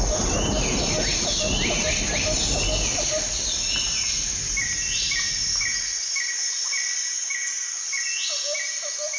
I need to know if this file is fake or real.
real